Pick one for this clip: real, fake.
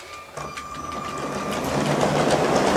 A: real